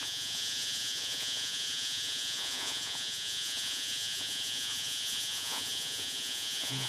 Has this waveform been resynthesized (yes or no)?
yes